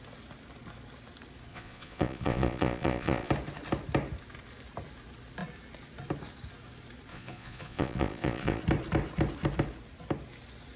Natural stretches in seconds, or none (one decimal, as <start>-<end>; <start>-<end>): 0.0-1.5; 3.3-7.1; 8.6-10.8